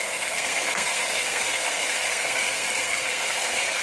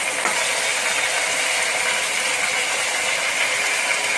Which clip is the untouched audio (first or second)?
second